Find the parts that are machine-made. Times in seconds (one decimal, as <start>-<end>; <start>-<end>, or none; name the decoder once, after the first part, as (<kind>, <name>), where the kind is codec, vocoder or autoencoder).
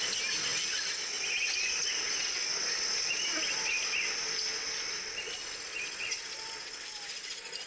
none